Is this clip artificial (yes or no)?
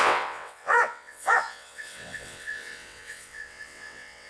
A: yes